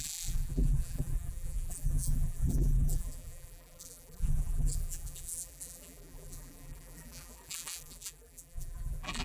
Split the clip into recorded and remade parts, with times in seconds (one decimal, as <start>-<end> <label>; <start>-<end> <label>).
0.0-9.2 remade